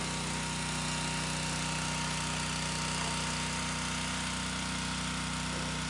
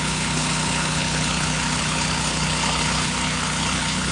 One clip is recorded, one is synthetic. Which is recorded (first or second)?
first